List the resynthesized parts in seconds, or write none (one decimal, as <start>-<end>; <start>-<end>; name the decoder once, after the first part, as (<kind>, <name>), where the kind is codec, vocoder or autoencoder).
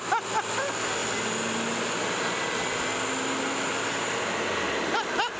none